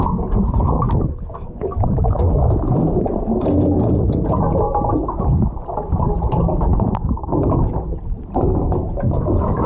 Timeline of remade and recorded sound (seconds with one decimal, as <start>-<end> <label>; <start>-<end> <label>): 0.0-0.6 recorded; 0.6-2.7 remade; 2.7-6.7 recorded; 6.7-7.6 remade; 7.6-9.7 recorded